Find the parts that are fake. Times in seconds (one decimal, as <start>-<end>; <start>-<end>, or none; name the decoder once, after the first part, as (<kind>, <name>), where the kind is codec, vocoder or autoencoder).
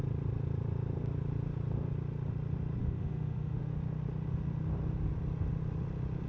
2.8-3.7 (autoencoder, DAC-VAE)